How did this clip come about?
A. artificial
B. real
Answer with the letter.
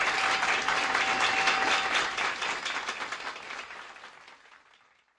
B